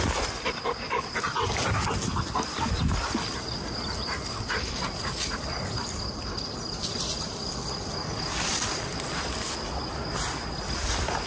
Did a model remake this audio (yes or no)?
no